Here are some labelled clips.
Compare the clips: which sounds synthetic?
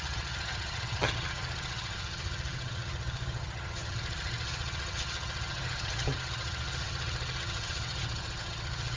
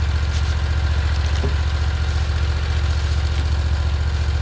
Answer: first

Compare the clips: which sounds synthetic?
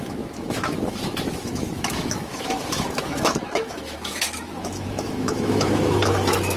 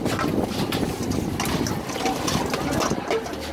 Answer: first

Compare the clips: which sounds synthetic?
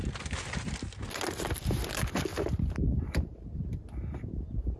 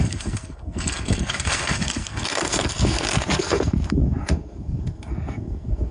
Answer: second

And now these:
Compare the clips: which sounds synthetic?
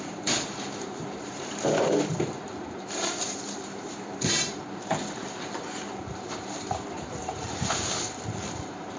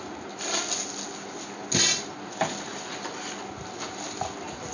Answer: first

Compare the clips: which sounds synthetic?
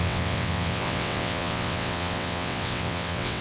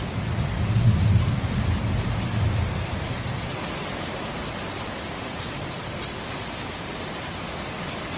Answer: first